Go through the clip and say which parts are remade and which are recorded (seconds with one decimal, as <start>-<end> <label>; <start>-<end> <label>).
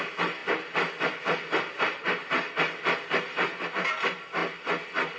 0.0-5.2 recorded